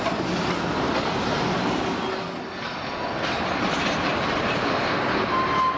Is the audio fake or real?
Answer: real